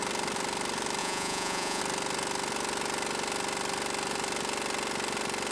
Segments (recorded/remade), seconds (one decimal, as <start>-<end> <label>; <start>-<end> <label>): 0.0-1.0 recorded; 1.0-1.8 remade; 1.8-5.5 recorded

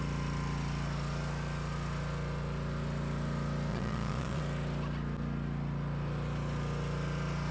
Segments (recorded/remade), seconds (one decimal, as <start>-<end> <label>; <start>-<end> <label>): 0.0-3.7 recorded; 3.7-4.4 remade; 4.4-7.5 recorded

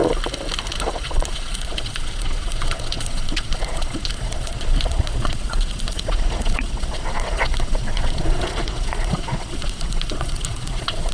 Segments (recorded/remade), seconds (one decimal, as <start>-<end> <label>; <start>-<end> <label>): 0.0-0.7 recorded; 0.7-11.1 remade

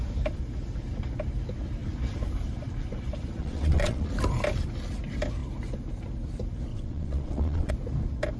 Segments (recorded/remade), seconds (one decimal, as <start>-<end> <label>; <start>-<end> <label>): 0.0-3.4 recorded; 3.4-4.1 remade; 4.1-6.7 recorded; 6.7-7.7 remade; 7.7-8.4 recorded

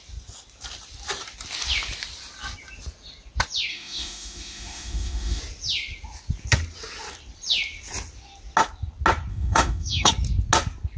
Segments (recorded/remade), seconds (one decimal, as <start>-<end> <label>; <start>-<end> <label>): 0.0-3.7 recorded; 3.7-5.4 remade; 5.4-9.3 recorded; 9.3-10.1 remade; 10.1-11.0 recorded